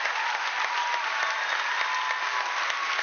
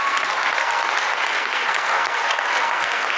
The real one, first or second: first